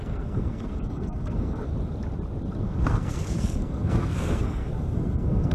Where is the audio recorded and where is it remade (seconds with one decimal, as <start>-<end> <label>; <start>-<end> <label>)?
0.0-1.7 remade; 1.7-2.6 recorded; 2.6-5.5 remade